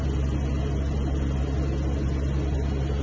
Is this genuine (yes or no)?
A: yes